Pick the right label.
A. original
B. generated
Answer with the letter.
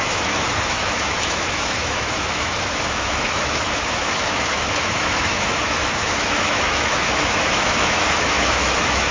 B